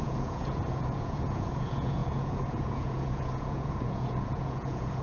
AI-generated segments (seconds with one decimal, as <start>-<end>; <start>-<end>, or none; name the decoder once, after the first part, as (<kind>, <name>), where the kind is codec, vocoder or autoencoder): 0.0-5.0 (vocoder, Vocos)

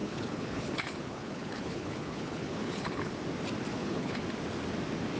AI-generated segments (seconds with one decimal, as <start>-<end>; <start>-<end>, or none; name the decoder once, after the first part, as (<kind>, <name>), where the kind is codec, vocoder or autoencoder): 0.0-3.1 (codec, HILCodec); 3.7-4.2

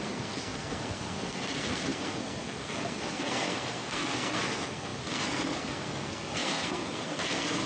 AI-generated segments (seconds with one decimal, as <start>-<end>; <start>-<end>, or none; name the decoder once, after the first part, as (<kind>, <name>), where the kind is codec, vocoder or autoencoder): 0.0-7.7 (codec, SNAC)

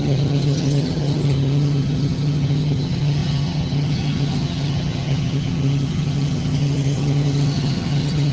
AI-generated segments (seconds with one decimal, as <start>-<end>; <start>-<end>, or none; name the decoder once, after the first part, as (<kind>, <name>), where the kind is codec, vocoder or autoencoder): 0.0-8.3 (vocoder, HiFi-GAN)

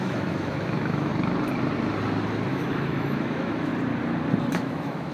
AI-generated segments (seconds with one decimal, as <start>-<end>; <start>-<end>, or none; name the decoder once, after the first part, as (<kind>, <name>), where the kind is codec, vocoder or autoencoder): 0.0-1.1 (autoencoder, DAC-VAE); 2.5-3.7; 4.5-5.1